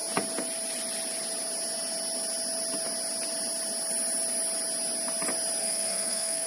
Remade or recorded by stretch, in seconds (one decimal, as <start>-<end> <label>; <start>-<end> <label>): 0.0-5.6 recorded; 5.6-6.5 remade